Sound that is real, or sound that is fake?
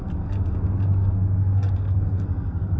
fake